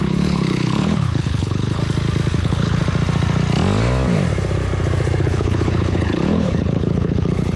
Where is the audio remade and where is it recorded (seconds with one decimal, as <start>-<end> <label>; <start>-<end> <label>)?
0.0-1.8 remade; 1.8-2.4 recorded; 2.4-2.8 remade; 2.8-5.2 recorded; 5.2-7.6 remade